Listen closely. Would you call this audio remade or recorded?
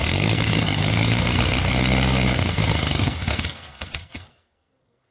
remade